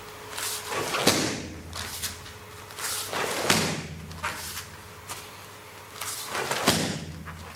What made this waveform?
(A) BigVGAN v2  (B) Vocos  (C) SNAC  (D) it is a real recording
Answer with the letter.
D